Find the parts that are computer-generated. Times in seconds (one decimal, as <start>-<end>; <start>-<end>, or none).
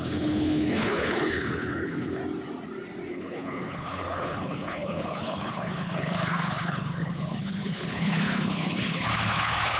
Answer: 0.0-2.2; 3.1-9.8